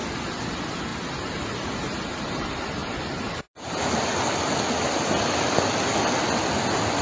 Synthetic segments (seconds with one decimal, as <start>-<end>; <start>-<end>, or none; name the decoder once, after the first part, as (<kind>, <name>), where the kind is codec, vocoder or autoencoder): none